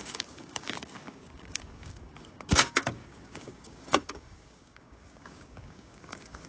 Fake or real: fake